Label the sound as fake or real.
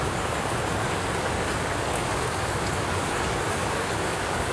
fake